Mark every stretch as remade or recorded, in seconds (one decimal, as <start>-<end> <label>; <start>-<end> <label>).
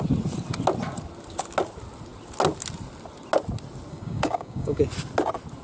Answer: 0.0-3.9 recorded; 3.9-4.8 remade; 4.8-5.6 recorded